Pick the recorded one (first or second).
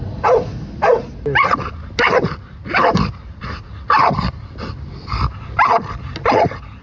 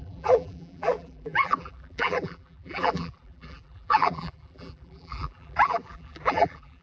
first